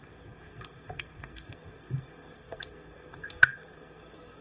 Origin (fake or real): fake